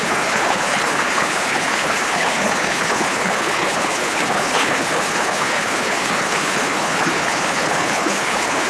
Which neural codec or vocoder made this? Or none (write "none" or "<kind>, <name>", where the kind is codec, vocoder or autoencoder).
codec, HILCodec